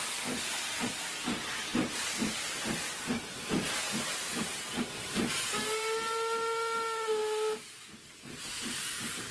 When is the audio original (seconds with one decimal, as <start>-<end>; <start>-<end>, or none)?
0.0-9.3